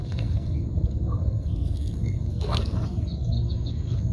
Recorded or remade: remade